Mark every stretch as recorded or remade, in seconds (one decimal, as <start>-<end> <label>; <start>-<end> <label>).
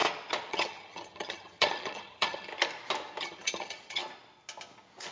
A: 0.0-0.5 recorded; 0.5-2.5 remade; 2.5-3.2 recorded; 3.2-4.0 remade; 4.0-5.1 recorded